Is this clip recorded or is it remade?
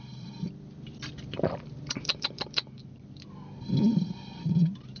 remade